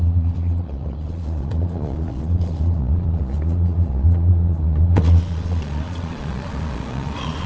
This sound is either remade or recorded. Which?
remade